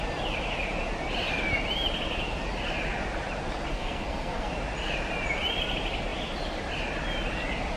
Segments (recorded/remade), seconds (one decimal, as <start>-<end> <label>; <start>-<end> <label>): 0.0-3.7 recorded; 3.7-4.5 remade; 4.5-7.8 recorded